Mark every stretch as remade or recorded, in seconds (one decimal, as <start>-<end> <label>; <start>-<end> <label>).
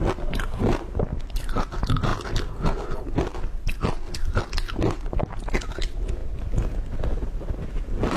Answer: 0.0-8.2 recorded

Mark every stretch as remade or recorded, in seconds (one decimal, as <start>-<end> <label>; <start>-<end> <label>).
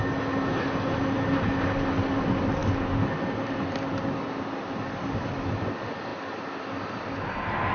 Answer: 0.0-7.7 recorded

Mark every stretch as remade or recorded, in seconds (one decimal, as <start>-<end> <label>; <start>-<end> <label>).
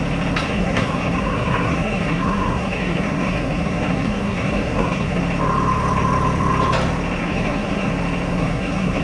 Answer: 0.0-0.4 recorded; 0.4-5.2 remade; 5.2-7.2 recorded; 7.2-7.9 remade; 7.9-8.3 recorded; 8.3-9.0 remade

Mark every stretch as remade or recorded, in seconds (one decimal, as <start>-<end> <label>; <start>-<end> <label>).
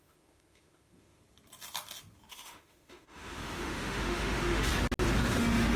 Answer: 0.0-1.2 remade; 1.2-2.3 recorded; 2.3-4.7 remade; 4.7-5.2 recorded; 5.2-5.8 remade